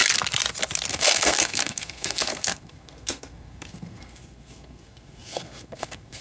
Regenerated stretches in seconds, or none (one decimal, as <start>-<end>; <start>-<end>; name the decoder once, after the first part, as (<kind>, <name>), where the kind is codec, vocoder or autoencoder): 0.9-6.2 (codec, SNAC)